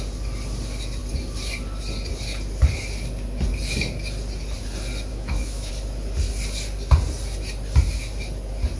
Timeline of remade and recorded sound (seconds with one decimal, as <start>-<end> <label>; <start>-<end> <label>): 0.0-5.1 recorded; 5.1-5.7 remade; 5.7-8.8 recorded